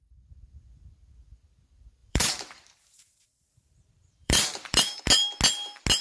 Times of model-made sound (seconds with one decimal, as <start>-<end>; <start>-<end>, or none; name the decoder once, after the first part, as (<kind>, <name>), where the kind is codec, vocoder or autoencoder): 2.0-5.0 (vocoder, BigVGAN v2)

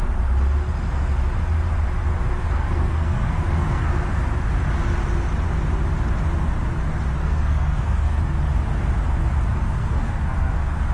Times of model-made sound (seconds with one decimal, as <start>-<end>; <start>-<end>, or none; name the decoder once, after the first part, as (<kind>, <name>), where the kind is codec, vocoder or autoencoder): 2.4-4.2 (codec, SNAC); 7.2-8.2; 9.5-10.9

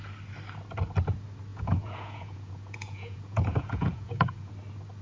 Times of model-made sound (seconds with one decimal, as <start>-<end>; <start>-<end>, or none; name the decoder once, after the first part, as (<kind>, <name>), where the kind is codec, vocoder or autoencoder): 1.5-4.5 (vocoder, Vocos)

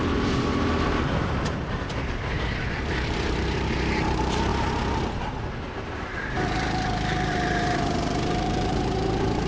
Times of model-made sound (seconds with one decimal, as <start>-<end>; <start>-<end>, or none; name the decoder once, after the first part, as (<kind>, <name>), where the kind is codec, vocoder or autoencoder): 0.0-4.5 (vocoder, BigVGAN v2); 5.7-9.5

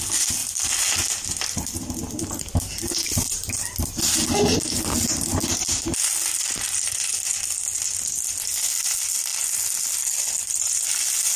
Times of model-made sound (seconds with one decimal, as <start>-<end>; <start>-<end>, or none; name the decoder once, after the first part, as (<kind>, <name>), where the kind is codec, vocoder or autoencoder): none

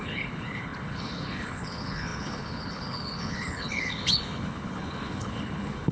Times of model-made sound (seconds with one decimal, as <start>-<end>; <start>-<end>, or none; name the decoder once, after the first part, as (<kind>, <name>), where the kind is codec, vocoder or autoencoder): 0.0-5.9 (codec, HILCodec)